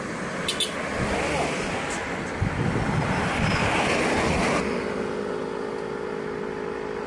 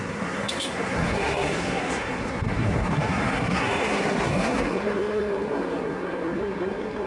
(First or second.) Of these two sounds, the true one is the first